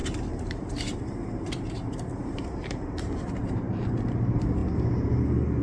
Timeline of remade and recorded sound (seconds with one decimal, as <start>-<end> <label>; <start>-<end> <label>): 0.0-4.6 remade; 4.6-5.6 recorded